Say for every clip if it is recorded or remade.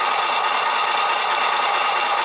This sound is recorded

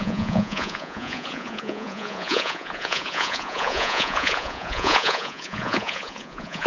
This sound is remade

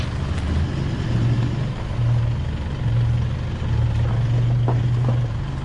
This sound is recorded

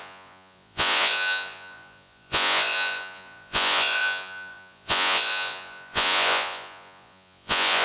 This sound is remade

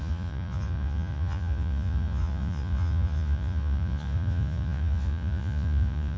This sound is remade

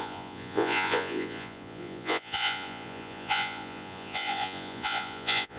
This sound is remade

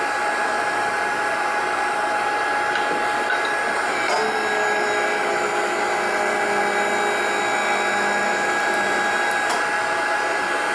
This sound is recorded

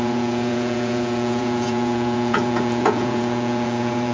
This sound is remade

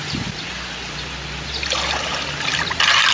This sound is recorded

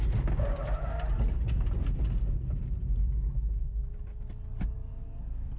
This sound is recorded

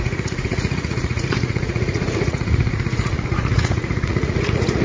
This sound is remade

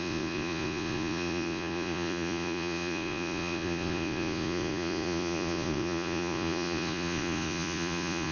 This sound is remade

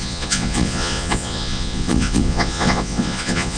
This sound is remade